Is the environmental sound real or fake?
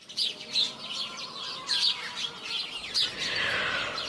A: real